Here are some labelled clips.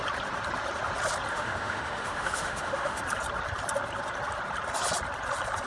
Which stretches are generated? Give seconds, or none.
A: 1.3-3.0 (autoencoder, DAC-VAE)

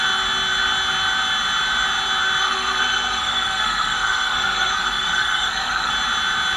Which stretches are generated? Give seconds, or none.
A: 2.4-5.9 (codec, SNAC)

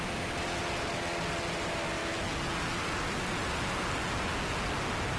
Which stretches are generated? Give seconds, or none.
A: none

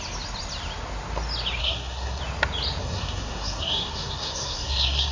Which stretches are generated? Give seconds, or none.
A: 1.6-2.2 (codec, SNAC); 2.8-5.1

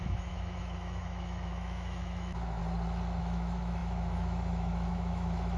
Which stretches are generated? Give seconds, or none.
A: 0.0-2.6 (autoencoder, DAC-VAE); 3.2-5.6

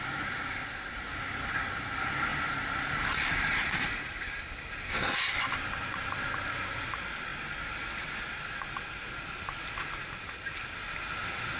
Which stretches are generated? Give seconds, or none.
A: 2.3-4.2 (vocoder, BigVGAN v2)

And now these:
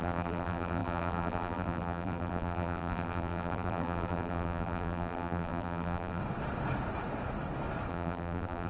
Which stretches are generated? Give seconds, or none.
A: 0.0-6.2 (vocoder, BigVGAN v2); 7.9-8.7

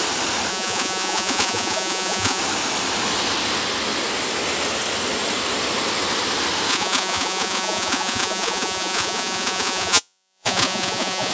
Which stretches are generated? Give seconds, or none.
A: 0.5-2.4 (vocoder, Vocos); 6.7-11.3